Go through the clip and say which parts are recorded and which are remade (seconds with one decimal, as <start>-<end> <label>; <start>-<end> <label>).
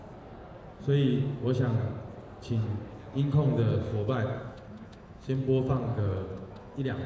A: 0.0-3.9 recorded; 3.9-5.4 remade; 5.4-5.9 recorded; 5.9-7.1 remade